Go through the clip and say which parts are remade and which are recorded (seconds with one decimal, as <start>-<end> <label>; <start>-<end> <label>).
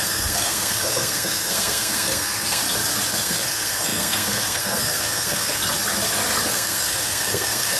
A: 0.0-2.6 remade; 2.6-3.1 recorded; 3.1-5.6 remade; 5.6-6.5 recorded; 6.5-7.8 remade